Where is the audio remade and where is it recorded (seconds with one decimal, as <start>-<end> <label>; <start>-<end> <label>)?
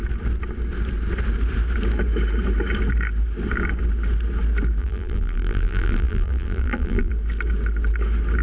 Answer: 0.0-4.8 recorded; 4.8-7.1 remade; 7.1-8.4 recorded